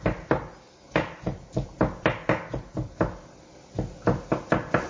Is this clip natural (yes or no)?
yes